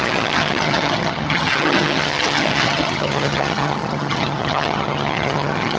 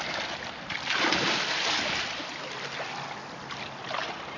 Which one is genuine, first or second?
second